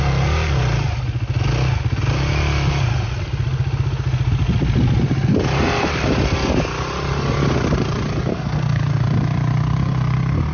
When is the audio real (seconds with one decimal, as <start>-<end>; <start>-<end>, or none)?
0.0-8.3; 8.8-10.5